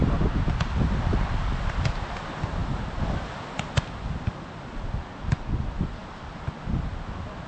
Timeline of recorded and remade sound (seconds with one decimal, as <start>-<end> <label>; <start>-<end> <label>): 0.0-7.5 recorded